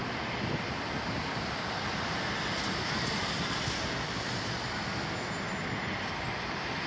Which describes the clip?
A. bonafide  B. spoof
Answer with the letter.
A